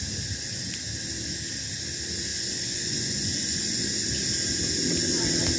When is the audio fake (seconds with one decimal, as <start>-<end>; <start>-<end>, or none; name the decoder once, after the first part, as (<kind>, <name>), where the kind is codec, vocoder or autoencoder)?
2.3-3.9 (vocoder, Vocos)